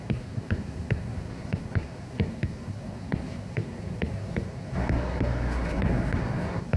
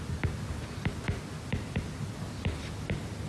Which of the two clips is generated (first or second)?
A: first